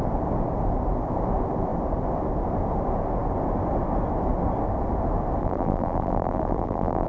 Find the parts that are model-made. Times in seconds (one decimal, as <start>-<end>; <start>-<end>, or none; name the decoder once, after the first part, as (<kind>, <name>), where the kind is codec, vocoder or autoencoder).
5.4-7.1 (vocoder, BigVGAN v2)